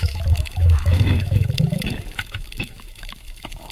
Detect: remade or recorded remade